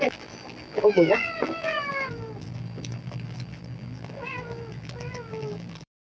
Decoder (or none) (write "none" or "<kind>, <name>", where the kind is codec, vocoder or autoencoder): vocoder, BigVGAN v2